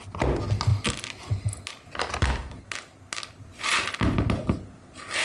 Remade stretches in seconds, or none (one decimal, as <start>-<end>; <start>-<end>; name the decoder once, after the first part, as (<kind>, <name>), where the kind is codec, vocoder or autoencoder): none